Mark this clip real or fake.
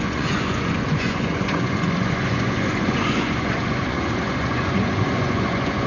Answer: fake